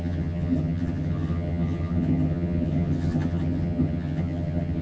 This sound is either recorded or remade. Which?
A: remade